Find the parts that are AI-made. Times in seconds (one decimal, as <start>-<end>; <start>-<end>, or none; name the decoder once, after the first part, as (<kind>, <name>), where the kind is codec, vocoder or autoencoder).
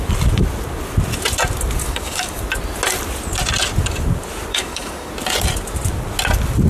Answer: 1.8-2.4 (codec, DAC); 4.5-5.1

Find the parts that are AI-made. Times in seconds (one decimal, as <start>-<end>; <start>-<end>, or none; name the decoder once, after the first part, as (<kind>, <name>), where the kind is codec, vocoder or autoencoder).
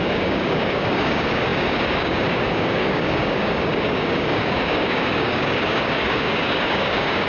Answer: 0.0-7.3 (codec, DAC)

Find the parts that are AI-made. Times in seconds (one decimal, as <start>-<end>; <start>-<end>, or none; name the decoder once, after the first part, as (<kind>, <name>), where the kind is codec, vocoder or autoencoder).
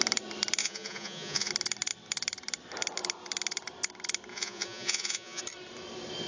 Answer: 0.6-1.5 (vocoder, Vocos); 4.3-5.4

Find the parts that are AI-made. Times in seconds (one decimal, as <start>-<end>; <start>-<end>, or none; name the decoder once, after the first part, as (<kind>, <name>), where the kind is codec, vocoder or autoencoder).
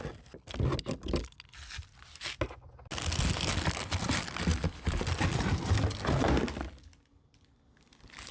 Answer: none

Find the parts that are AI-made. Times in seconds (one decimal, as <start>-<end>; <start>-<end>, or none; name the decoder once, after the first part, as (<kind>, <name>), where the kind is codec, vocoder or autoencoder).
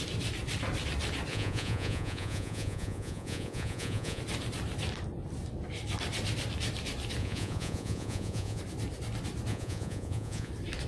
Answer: 1.3-4.2 (vocoder, Vocos); 7.2-8.6; 9.5-10.5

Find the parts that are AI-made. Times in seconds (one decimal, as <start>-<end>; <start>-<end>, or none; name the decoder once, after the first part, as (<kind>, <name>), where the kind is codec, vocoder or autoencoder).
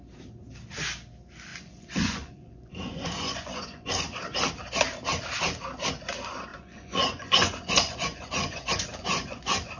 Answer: 1.5-3.9 (vocoder, Vocos); 6.5-9.8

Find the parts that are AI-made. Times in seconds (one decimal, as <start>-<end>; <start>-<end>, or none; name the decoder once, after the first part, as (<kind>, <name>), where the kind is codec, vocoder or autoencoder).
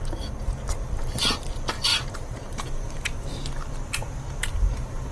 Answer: 1.9-5.1 (vocoder, BigVGAN v2)